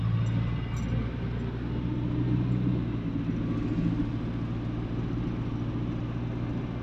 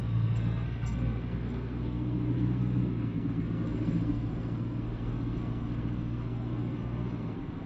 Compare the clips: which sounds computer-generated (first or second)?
second